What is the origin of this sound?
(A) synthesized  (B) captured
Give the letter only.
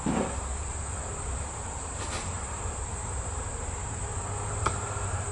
A